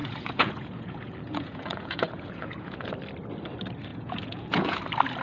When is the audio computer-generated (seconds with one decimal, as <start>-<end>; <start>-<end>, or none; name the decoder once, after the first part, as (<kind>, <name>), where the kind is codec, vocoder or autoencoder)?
0.0-2.9 (vocoder, Vocos); 3.9-4.8